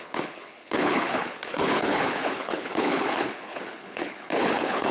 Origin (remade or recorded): remade